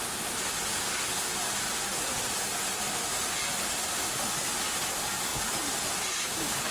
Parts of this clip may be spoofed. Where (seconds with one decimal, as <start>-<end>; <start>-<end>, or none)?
none